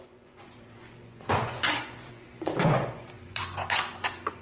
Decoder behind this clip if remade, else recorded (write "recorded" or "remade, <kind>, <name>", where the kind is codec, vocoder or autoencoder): remade, vocoder, Vocos